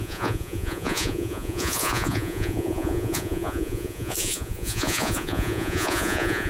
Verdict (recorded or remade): remade